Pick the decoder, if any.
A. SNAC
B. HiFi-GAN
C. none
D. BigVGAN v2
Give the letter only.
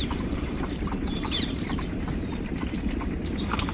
D